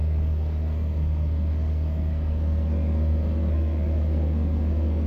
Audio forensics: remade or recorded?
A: remade